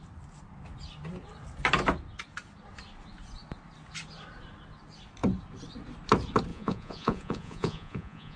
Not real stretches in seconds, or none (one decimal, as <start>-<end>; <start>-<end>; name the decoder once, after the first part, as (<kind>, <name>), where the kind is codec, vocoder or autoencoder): 6.5-8.4 (vocoder, Vocos)